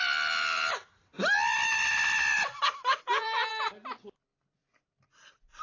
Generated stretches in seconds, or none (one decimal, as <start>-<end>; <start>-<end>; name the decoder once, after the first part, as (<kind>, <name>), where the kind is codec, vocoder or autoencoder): 0.0-3.5 (vocoder, BigVGAN v2); 4.6-5.6